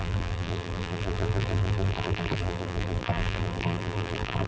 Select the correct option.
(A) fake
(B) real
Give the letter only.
A